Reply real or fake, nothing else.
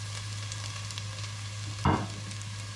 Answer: real